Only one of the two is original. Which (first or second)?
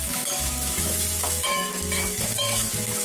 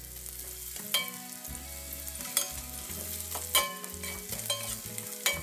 second